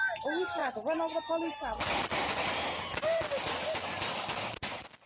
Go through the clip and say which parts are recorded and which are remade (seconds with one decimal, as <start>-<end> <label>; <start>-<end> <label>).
0.0-5.1 recorded